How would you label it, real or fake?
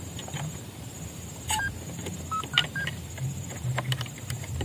fake